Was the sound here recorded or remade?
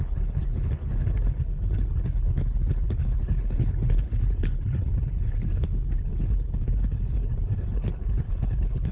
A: remade